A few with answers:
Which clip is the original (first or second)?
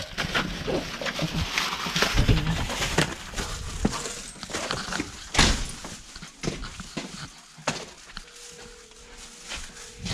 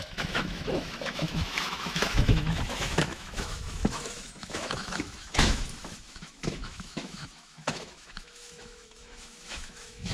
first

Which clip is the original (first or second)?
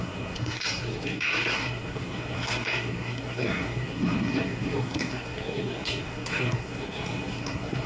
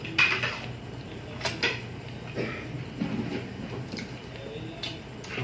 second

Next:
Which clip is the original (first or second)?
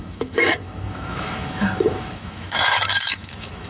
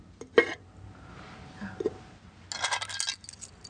second